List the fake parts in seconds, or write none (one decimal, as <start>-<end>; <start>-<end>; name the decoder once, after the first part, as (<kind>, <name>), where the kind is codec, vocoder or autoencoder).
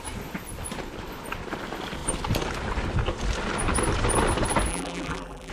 4.7-5.5 (vocoder, BigVGAN v2)